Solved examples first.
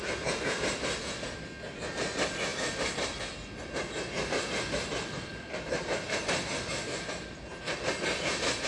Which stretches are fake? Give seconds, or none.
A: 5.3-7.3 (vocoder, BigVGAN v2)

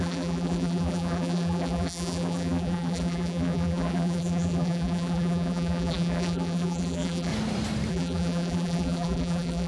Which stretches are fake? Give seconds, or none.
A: 0.0-7.3 (vocoder, BigVGAN v2); 7.9-9.7